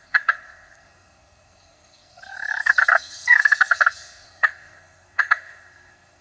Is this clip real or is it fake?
fake